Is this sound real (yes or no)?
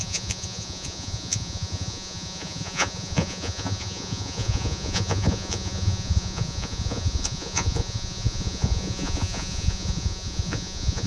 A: no